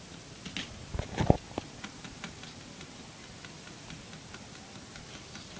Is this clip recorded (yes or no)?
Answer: no